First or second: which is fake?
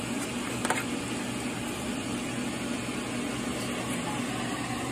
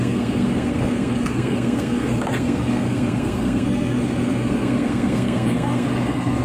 second